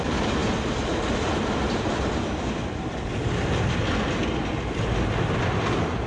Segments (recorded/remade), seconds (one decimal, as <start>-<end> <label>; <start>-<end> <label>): 0.0-0.4 recorded; 0.4-3.8 remade; 3.8-6.1 recorded